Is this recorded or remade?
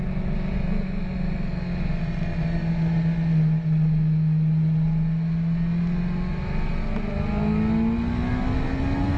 recorded